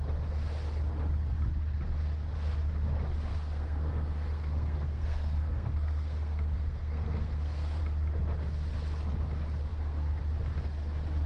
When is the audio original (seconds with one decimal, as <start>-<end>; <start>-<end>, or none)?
0.0-3.3; 7.8-9.7; 10.2-11.3

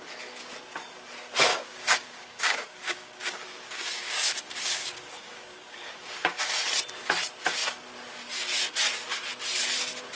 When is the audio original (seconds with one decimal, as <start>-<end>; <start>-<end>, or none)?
0.0-1.5; 6.4-10.2